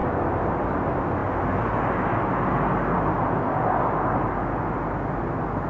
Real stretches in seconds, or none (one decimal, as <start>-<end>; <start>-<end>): 0.0-5.7

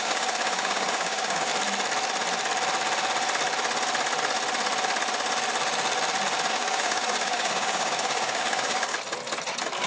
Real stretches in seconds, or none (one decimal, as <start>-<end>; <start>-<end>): 1.5-6.5; 8.9-9.9

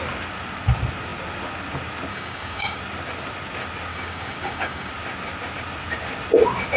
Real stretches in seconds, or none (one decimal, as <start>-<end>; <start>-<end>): 0.0-2.1; 2.8-3.9; 4.9-6.8

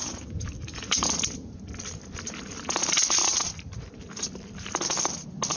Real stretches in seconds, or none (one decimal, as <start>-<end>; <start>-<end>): 1.1-5.6

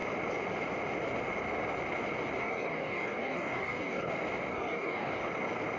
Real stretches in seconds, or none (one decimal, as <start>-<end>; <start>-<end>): 0.0-2.4; 4.1-4.5; 5.2-5.8

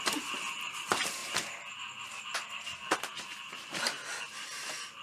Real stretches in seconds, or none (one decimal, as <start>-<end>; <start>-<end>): 0.0-5.0

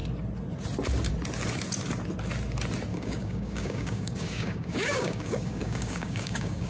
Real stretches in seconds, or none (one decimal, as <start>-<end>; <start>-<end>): 0.0-2.9

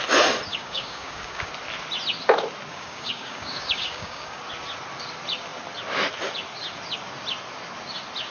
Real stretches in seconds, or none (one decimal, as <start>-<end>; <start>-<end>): 0.0-0.5; 1.5-2.7; 4.4-8.3